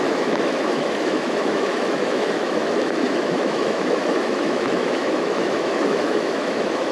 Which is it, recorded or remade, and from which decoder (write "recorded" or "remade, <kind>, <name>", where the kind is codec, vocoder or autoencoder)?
remade, autoencoder, DAC-VAE